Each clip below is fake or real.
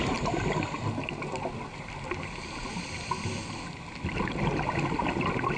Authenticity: real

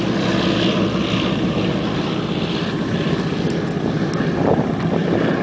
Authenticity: real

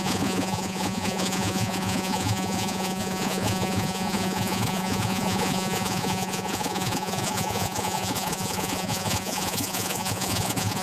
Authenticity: fake